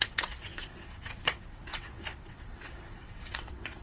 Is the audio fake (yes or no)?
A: yes